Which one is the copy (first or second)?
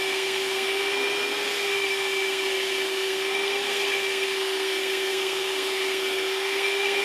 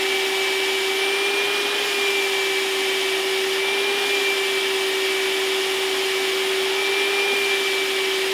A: first